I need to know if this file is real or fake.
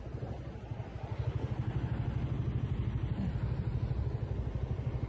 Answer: real